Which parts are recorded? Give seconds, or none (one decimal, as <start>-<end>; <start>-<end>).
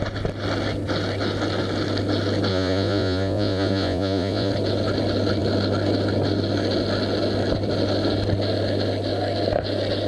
0.0-2.5; 4.5-10.1